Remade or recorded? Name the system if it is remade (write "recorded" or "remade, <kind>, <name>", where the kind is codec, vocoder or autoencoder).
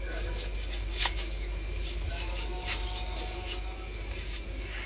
remade, codec, DAC